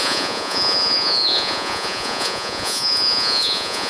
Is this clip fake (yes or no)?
yes